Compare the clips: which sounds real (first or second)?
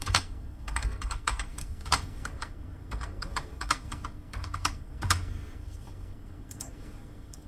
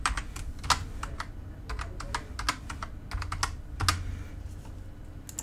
second